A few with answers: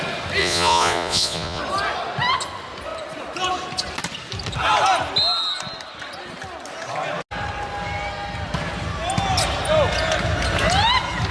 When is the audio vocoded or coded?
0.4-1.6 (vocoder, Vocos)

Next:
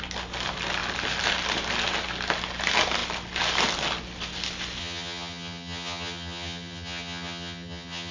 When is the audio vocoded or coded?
4.8-8.1 (vocoder, HiFi-GAN)